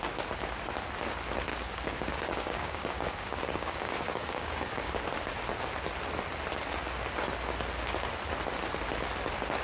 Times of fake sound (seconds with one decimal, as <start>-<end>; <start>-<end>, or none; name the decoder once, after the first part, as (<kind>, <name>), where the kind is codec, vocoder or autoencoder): 1.5-4.9 (codec, DAC)